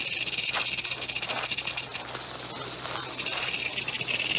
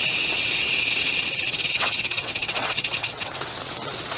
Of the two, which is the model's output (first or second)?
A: second